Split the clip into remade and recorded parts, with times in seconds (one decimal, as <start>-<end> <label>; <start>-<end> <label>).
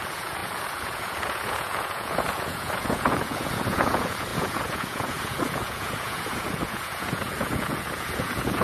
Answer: 0.0-8.6 remade